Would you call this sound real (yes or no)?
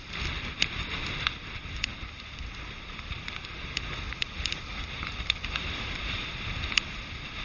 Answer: yes